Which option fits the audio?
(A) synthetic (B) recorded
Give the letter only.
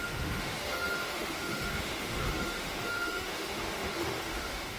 A